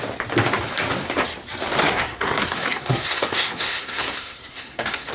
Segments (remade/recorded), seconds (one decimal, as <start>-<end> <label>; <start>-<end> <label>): 0.0-1.8 recorded; 1.8-5.1 remade